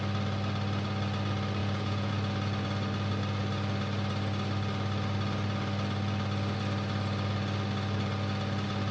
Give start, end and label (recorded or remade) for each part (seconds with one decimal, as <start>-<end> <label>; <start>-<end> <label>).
0.0-1.6 recorded; 1.6-2.1 remade; 2.1-8.9 recorded